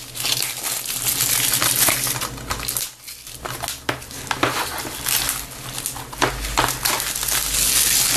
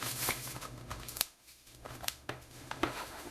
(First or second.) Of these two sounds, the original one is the first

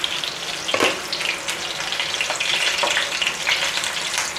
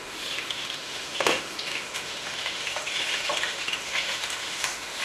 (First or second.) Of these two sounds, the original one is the first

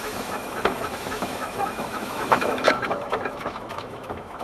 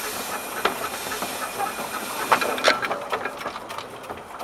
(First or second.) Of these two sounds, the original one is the second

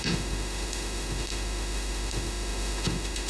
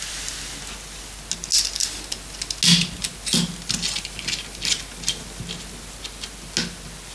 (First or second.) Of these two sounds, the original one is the second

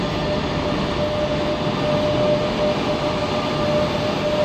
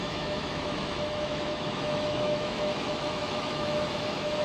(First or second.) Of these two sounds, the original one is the first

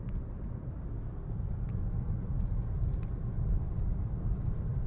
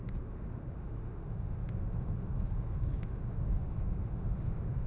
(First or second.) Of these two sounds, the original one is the first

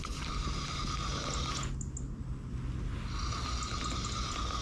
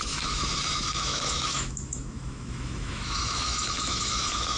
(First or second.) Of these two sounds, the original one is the first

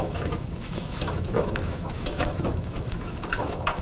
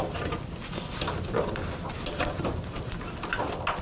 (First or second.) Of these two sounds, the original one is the second